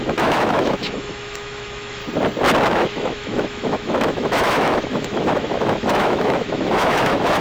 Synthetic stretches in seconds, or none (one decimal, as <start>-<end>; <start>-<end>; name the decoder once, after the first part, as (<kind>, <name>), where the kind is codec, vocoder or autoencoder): 0.0-2.0 (autoencoder, DAC-VAE); 2.7-7.4